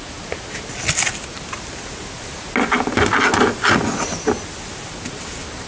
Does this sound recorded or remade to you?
recorded